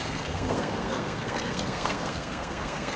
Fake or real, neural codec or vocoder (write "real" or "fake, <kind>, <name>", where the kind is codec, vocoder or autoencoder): fake, codec, SNAC